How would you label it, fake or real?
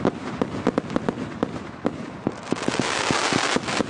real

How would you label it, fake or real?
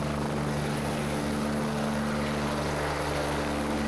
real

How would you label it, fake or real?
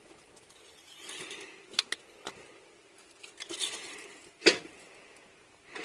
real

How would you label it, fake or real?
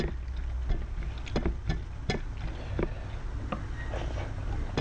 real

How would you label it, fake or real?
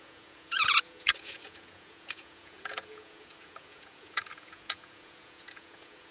fake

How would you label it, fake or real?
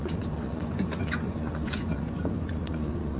fake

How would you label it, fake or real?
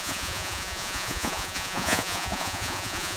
fake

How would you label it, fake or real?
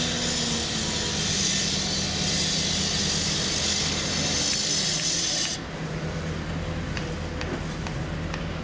real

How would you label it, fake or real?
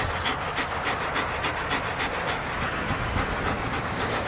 real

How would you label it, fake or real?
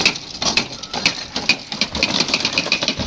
real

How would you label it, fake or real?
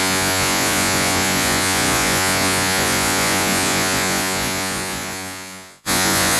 fake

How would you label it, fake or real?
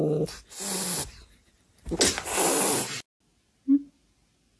real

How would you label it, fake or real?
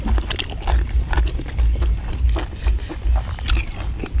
real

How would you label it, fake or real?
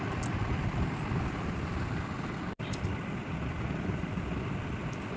real